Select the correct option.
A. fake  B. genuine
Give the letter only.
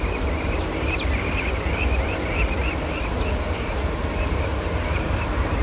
B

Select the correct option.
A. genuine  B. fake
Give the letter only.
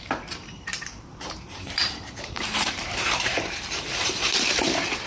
B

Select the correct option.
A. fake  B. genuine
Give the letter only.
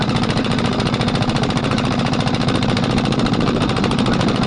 A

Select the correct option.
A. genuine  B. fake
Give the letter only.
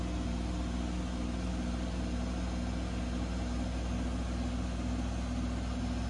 A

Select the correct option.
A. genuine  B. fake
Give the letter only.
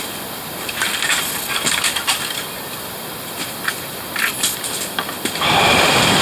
B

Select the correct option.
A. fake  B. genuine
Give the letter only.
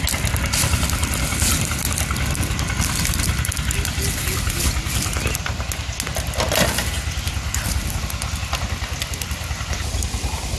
B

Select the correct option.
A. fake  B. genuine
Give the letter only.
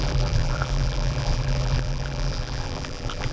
A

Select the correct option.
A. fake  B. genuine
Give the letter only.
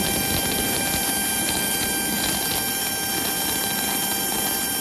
B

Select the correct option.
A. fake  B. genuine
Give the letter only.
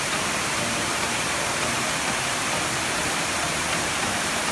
A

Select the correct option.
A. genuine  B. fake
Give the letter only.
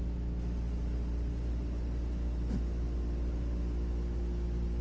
A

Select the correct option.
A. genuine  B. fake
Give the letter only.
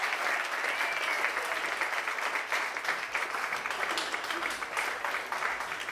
A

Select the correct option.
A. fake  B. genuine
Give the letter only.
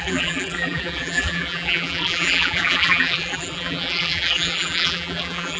A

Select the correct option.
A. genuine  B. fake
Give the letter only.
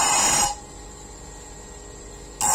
A